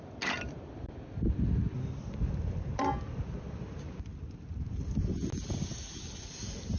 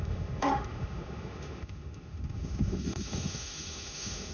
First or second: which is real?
first